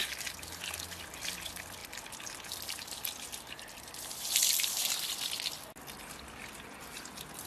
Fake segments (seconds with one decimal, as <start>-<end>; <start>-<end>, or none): none